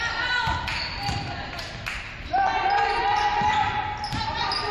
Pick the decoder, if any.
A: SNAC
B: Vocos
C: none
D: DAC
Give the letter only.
C